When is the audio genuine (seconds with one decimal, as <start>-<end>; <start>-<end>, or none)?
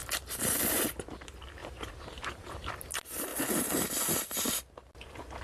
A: 0.0-1.6; 2.7-5.4